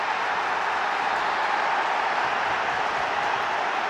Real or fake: real